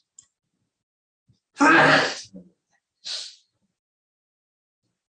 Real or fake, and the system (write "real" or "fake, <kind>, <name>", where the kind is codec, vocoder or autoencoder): real